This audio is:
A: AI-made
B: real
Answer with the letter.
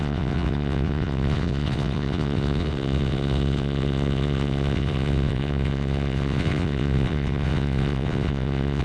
A